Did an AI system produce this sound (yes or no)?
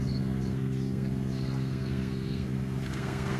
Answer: yes